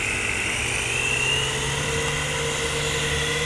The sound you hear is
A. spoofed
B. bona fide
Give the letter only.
B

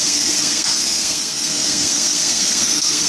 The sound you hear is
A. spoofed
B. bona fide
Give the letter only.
A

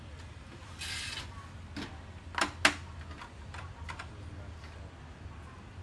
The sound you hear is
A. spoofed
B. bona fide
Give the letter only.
B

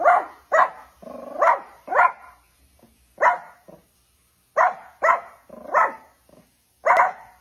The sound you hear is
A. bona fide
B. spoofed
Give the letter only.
A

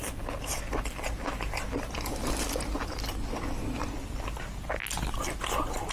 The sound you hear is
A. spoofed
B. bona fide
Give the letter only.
B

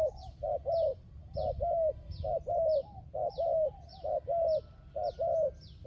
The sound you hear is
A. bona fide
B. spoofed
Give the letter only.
A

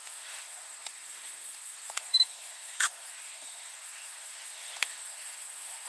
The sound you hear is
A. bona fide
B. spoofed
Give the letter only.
B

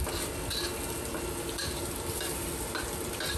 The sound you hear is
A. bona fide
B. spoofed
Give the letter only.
A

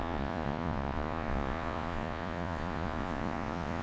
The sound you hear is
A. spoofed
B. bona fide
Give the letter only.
A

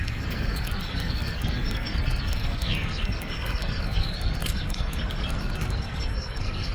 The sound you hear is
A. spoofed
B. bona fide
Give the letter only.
A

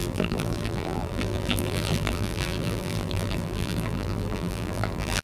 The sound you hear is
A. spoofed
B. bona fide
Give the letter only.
A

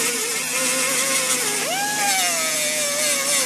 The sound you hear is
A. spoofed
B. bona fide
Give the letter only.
B